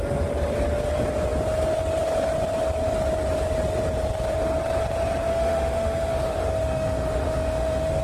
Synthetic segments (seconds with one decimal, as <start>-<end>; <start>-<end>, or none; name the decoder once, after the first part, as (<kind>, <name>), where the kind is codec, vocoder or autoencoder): 5.3-8.0 (autoencoder, DAC-VAE)